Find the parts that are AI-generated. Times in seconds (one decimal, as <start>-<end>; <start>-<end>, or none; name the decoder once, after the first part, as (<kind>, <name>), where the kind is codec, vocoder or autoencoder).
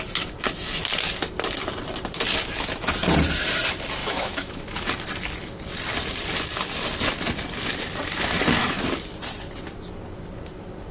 4.0-4.6 (autoencoder, DAC-VAE)